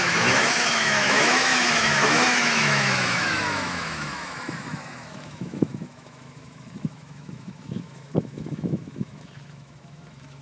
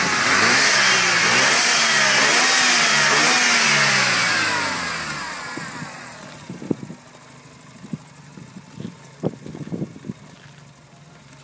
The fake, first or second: first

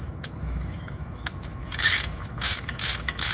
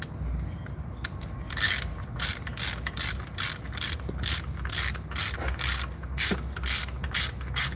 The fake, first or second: first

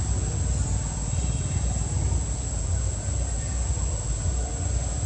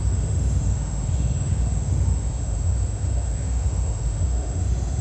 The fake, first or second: second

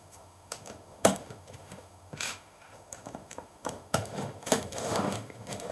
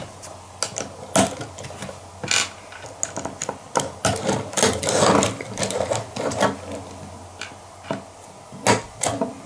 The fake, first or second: first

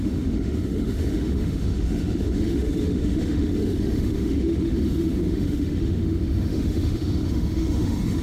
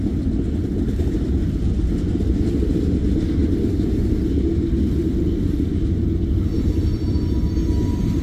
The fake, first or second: first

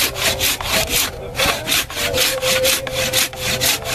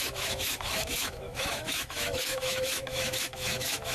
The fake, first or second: second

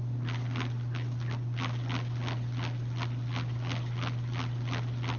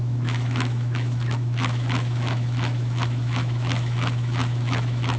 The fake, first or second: second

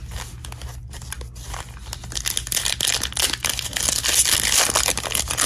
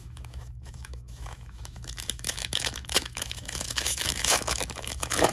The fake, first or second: second